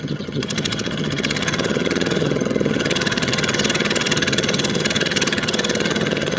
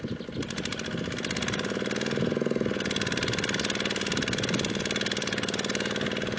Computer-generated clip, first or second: first